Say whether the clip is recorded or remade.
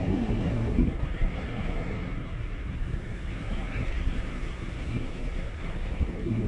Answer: remade